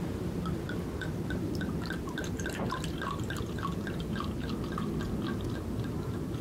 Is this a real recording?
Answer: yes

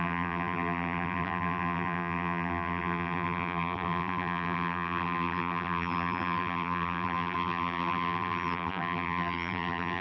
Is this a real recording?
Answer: no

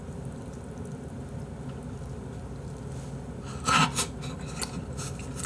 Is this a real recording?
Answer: yes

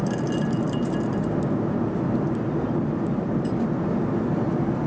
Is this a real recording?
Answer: yes